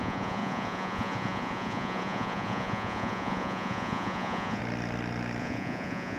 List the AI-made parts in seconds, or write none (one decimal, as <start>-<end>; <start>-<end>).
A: 0.0-4.6; 5.4-6.2